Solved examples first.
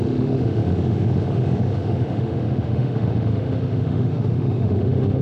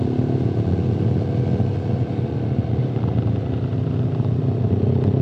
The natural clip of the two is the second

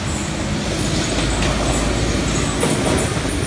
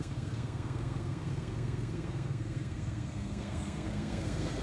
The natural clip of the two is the first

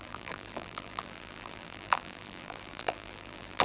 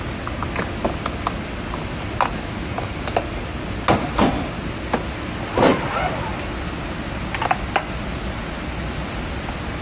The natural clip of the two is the second